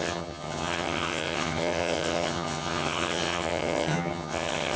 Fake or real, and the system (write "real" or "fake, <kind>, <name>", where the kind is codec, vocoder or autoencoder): fake, vocoder, HiFi-GAN